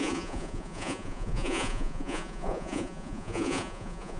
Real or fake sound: fake